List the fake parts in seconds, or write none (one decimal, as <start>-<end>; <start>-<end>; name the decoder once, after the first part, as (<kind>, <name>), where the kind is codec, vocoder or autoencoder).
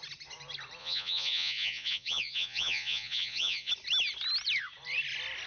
0.8-3.7 (vocoder, Vocos)